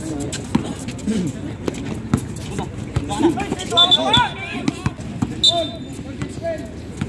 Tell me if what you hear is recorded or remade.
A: recorded